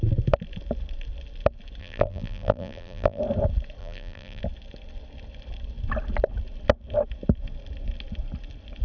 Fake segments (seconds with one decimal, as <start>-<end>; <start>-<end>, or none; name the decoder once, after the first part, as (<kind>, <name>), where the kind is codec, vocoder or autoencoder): 1.8-3.2 (vocoder, BigVGAN v2); 3.8-4.4